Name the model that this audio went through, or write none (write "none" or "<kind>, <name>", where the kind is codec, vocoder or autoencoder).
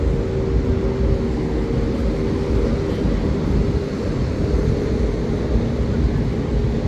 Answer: none